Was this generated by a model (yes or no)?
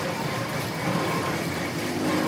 yes